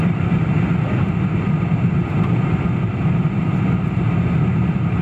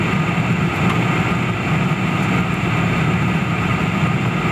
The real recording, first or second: second